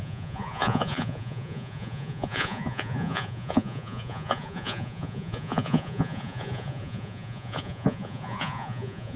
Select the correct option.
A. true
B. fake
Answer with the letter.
B